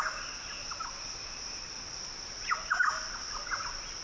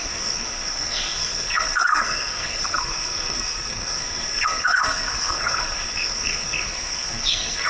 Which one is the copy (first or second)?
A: second